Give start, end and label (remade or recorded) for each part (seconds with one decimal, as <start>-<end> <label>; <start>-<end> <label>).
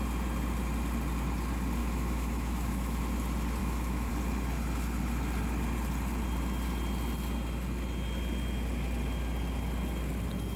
0.0-1.8 recorded; 1.8-3.0 remade; 3.0-3.6 recorded; 3.6-4.1 remade; 4.1-10.6 recorded